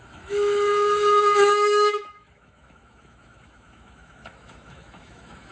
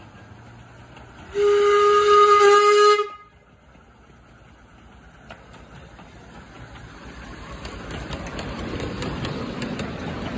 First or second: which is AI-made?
first